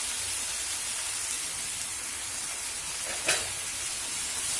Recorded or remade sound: recorded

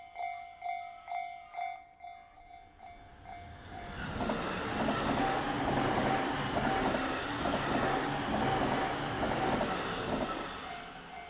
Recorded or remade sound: recorded